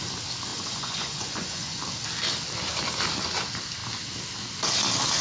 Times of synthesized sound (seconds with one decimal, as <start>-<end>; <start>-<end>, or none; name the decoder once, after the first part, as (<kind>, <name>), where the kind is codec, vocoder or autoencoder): 0.5-1.8 (vocoder, Vocos)

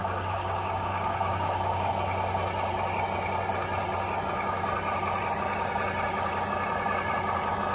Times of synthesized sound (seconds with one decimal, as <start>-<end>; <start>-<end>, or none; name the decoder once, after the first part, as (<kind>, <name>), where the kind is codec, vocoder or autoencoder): 0.0-1.9 (codec, DAC)